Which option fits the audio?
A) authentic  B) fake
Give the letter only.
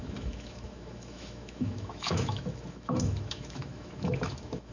B